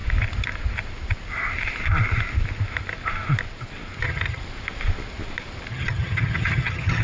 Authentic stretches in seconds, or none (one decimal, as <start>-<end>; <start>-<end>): 0.0-4.0; 4.4-5.7